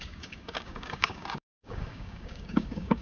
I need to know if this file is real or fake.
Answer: fake